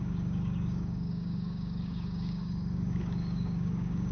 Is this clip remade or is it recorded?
remade